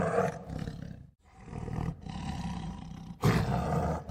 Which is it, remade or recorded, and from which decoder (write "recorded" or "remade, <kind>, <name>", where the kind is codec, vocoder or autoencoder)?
remade, vocoder, BigVGAN v2